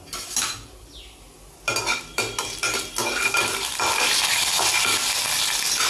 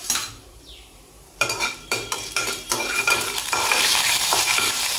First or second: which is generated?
second